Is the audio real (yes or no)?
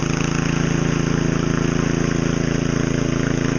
yes